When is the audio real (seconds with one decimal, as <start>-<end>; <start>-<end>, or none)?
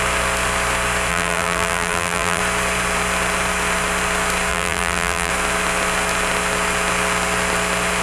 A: 0.0-1.1; 2.4-4.5; 5.3-8.0